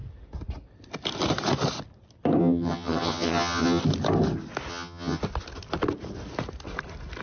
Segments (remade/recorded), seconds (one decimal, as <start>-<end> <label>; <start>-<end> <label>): 0.0-2.4 recorded; 2.4-3.8 remade; 3.8-4.7 recorded; 4.7-5.2 remade; 5.2-7.2 recorded